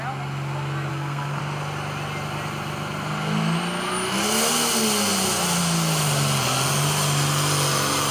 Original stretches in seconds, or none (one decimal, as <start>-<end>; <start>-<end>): 0.0-0.9; 1.4-8.1

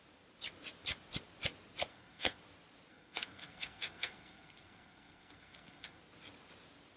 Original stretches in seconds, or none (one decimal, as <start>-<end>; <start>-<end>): 0.0-1.9; 2.4-2.9; 6.0-7.0

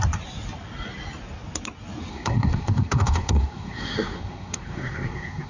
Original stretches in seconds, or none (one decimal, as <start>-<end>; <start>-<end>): 0.0-2.1

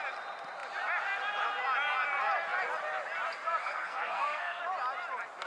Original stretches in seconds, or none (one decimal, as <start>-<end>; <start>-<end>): 0.0-3.6; 4.6-5.5

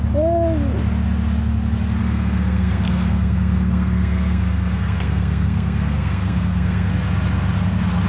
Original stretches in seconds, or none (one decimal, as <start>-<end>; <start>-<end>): 0.0-2.0; 6.9-8.1

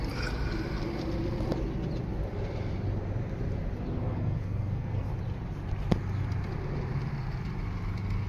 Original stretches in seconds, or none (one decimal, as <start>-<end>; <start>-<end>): 0.0-4.0; 5.1-8.3